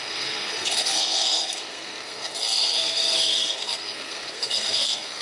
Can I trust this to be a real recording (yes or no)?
no